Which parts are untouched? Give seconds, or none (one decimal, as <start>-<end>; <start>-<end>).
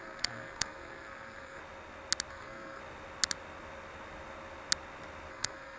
1.6-2.3; 2.8-5.3